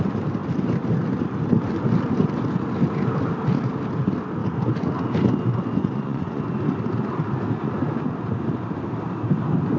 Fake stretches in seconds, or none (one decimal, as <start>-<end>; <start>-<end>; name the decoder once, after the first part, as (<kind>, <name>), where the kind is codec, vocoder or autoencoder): 5.8-6.4 (vocoder, Vocos)